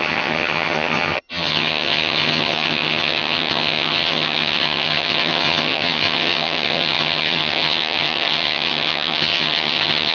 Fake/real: fake